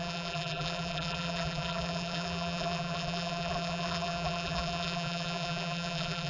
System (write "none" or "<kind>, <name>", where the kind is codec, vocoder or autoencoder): vocoder, BigVGAN v2